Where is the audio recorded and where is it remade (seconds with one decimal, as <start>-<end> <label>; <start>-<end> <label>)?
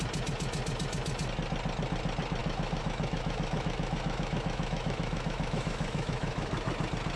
0.0-2.4 recorded; 2.4-6.7 remade; 6.7-7.2 recorded